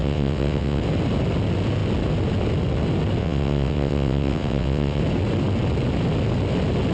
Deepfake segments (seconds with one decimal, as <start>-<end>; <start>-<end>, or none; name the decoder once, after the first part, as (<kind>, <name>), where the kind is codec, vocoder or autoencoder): 0.0-0.8 (vocoder, WaveNeXt); 3.2-5.0